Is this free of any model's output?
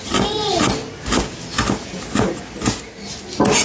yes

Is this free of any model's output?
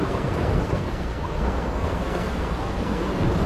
no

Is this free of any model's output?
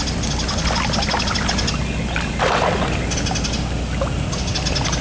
yes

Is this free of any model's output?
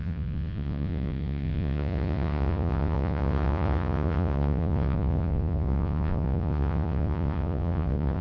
no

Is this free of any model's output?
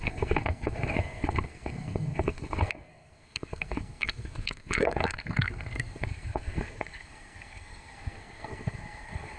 no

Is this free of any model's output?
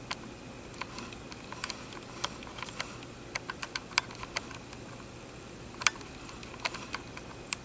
yes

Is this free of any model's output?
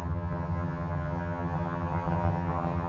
no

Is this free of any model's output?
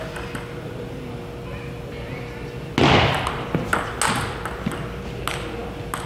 yes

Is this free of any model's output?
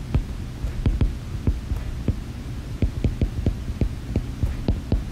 yes